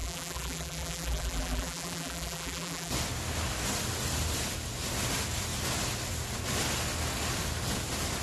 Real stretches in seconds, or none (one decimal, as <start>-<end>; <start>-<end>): 2.9-8.2

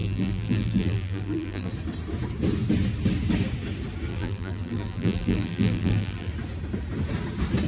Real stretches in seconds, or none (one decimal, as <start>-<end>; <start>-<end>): 1.7-4.1; 6.3-7.7

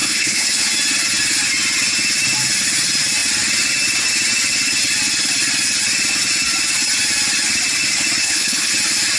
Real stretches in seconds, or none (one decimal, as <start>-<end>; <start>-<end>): 0.7-8.2; 8.7-9.2